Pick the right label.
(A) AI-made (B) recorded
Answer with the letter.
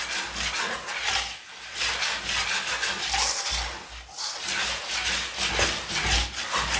B